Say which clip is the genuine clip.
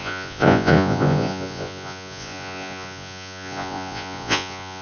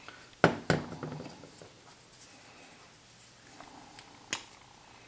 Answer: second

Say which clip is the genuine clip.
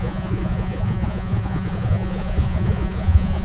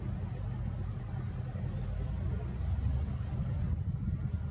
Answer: second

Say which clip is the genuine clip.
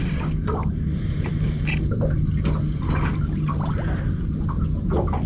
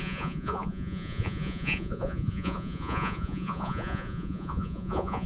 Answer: first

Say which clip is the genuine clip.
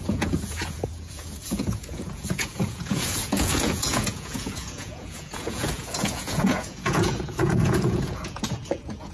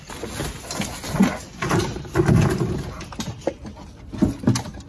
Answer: second